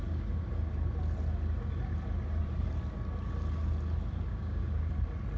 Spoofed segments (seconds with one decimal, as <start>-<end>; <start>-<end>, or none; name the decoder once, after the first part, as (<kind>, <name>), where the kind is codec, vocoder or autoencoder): 4.3-4.9 (codec, DAC)